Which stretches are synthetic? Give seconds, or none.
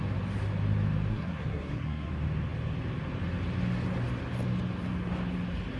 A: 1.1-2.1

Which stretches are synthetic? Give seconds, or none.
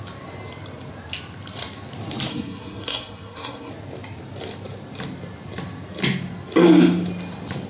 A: 2.3-3.7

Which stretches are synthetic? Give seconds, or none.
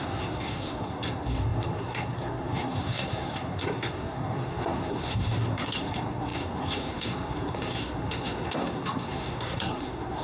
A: 0.0-10.2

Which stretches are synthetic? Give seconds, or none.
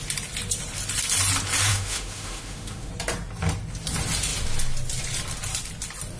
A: 1.7-2.9